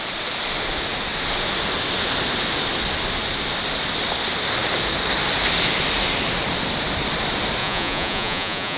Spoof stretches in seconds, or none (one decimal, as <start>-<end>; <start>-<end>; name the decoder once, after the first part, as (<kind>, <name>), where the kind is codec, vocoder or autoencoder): 7.6-8.8 (vocoder, Vocos)